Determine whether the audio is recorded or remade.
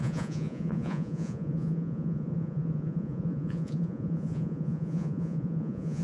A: remade